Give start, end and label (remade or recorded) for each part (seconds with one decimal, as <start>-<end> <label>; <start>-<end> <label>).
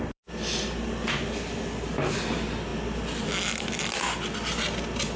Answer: 0.0-5.2 recorded